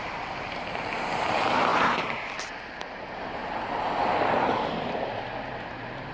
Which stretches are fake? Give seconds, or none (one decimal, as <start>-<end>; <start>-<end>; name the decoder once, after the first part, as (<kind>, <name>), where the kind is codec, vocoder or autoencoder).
none